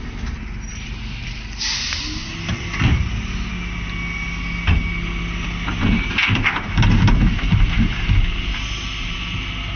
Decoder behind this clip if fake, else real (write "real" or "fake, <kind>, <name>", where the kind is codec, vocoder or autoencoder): real